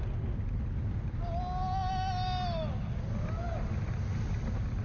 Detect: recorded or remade recorded